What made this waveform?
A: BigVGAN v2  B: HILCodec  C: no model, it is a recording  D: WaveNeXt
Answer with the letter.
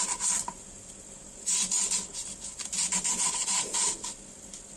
A